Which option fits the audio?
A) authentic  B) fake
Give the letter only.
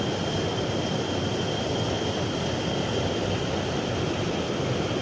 A